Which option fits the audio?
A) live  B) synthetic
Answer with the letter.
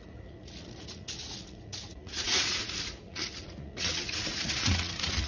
B